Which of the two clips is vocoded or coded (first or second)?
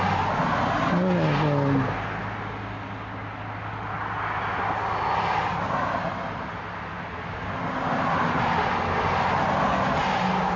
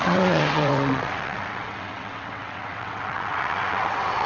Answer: second